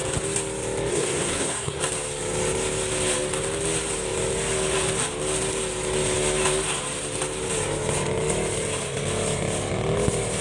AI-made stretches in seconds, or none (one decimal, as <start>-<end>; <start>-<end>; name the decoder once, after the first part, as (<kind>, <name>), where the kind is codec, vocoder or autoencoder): 0.9-1.8 (codec, SNAC)